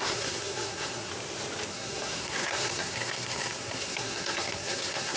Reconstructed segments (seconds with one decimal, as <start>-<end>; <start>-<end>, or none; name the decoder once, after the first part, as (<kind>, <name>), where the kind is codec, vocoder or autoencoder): 0.0-1.1 (codec, SNAC); 1.7-5.2